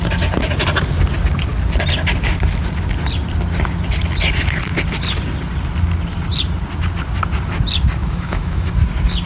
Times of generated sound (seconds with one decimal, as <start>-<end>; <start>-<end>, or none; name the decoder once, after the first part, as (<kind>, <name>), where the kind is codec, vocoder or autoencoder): 8.0-8.7 (autoencoder, DAC-VAE)